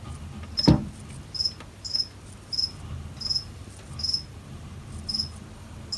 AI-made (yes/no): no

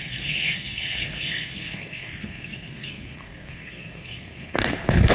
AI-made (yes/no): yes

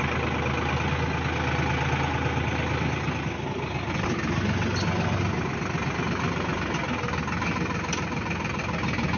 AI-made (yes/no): no